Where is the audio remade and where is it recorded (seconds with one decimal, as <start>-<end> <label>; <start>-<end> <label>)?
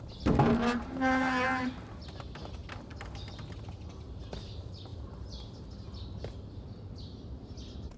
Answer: 0.0-4.9 recorded; 4.9-5.7 remade; 5.7-8.0 recorded